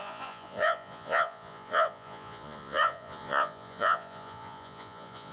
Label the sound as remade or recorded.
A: remade